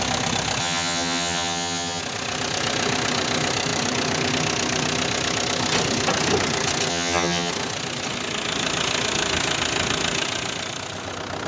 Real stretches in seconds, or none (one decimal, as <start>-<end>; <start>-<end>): 0.0-0.6; 2.0-6.9; 7.5-11.5

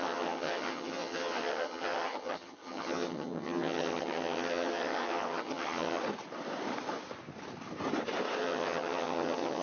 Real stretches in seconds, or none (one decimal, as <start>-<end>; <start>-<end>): 6.0-8.4

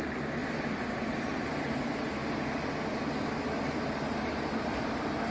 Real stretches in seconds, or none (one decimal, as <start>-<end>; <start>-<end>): 0.0-5.3

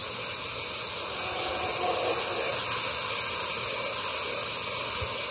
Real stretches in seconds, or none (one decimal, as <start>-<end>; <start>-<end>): 0.0-5.3

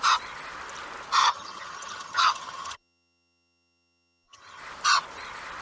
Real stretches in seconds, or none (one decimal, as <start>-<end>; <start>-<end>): 0.0-1.2; 4.6-5.6

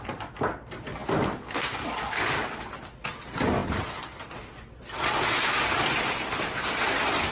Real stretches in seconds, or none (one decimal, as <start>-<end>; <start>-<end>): 0.0-7.3